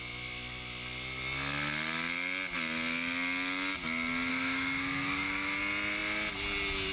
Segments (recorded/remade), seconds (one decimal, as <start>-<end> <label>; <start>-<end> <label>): 0.0-4.3 recorded; 4.3-5.6 remade; 5.6-6.9 recorded